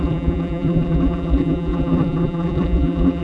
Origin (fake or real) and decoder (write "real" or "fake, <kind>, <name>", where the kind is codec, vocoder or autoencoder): fake, vocoder, BigVGAN v2